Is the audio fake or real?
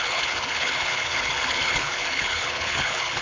fake